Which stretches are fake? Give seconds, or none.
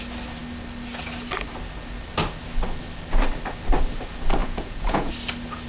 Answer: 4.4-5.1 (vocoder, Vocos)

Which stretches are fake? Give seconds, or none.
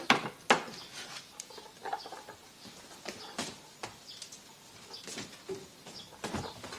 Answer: none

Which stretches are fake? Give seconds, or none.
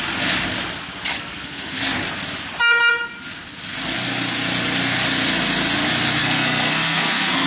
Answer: 1.1-1.8 (codec, SNAC); 6.2-7.5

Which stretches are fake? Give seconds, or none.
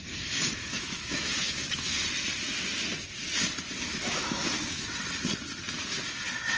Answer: 0.6-2.0 (autoencoder, DAC-VAE); 3.9-4.9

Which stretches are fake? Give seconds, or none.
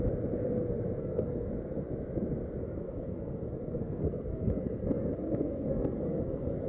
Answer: 1.0-1.5 (codec, SNAC); 2.6-6.7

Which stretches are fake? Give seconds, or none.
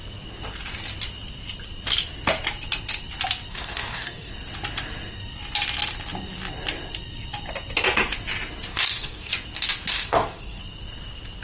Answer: 3.5-4.3 (codec, DAC); 8.7-9.3; 9.9-10.6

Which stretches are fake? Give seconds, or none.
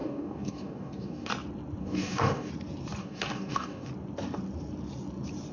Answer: 0.0-1.3 (codec, DAC); 1.8-2.5; 3.0-3.9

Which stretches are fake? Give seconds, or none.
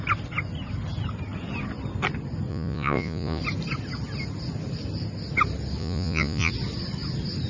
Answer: 2.5-3.4 (vocoder, Vocos); 5.8-6.5